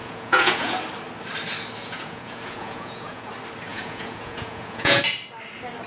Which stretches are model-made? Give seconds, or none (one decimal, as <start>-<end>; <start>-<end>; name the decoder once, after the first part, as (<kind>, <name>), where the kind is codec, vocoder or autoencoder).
0.0-0.8 (vocoder, Vocos); 1.8-3.3; 3.7-5.0